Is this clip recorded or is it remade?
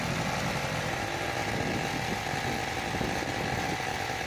recorded